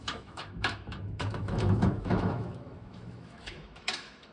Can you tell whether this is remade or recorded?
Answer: remade